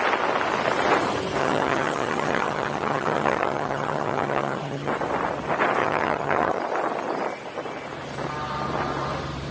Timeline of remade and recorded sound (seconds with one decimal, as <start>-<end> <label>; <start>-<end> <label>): 0.0-1.4 recorded; 1.4-4.9 remade; 4.9-5.8 recorded; 5.8-6.6 remade; 6.6-9.5 recorded